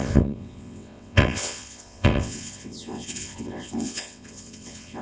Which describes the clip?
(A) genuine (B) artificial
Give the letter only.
B